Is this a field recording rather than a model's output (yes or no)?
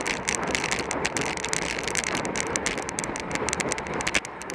yes